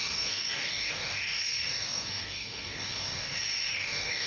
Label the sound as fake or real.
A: fake